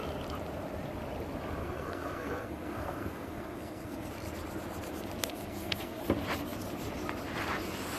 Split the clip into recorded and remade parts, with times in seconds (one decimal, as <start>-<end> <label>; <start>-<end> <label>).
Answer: 0.0-1.6 recorded; 1.6-4.1 remade; 4.1-5.3 recorded; 5.3-6.0 remade; 6.0-8.0 recorded

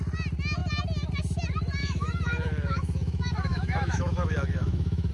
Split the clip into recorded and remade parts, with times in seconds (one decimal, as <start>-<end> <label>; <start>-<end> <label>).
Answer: 0.0-1.8 recorded; 1.8-5.1 remade